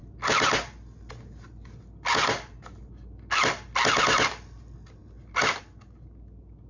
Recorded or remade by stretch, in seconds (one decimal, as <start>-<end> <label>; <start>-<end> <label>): 0.0-6.7 recorded